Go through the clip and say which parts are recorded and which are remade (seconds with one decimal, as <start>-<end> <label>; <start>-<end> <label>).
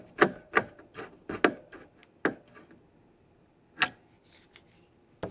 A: 0.0-5.3 recorded